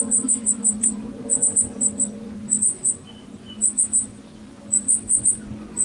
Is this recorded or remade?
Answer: remade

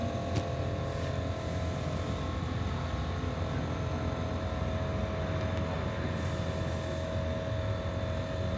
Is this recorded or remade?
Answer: recorded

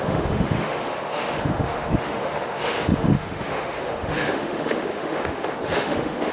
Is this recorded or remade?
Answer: remade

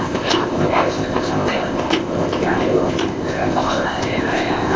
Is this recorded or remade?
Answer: remade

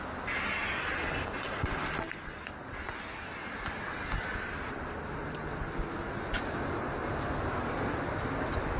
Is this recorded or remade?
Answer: recorded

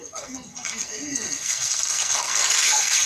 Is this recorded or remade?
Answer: remade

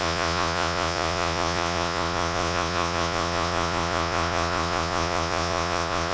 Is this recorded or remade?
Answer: remade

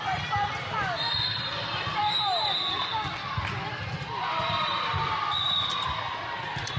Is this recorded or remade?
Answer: recorded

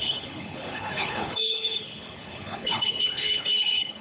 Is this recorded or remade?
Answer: remade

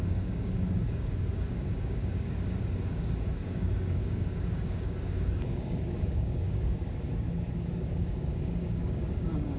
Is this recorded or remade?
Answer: remade